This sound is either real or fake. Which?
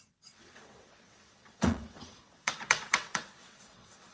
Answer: fake